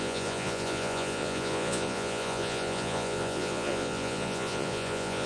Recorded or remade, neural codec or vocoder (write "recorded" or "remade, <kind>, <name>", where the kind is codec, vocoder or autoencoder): remade, vocoder, Vocos